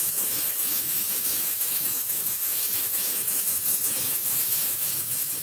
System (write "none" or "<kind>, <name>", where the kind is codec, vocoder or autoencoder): autoencoder, DAC-VAE